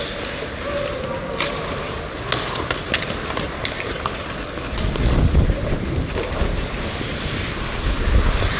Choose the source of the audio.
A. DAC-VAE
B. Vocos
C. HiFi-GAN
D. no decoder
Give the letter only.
D